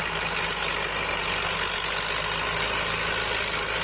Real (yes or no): yes